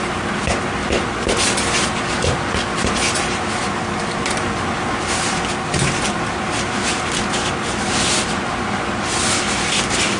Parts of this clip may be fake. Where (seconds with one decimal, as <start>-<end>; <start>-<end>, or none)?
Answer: none